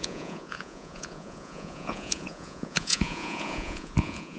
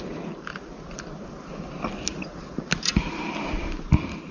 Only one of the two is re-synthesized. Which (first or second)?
first